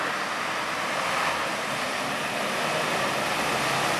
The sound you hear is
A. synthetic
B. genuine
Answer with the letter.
B